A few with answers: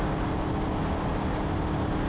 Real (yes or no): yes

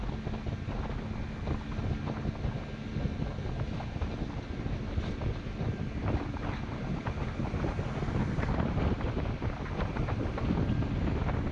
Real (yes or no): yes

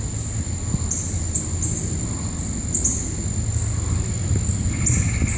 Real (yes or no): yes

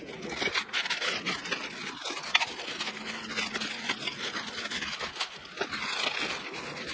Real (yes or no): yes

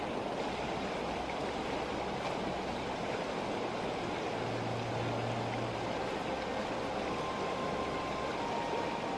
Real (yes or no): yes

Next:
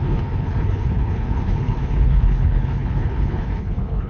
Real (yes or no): no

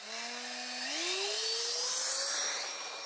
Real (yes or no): yes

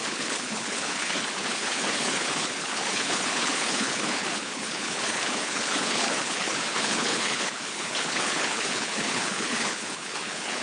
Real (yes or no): no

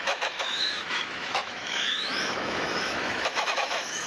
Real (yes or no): no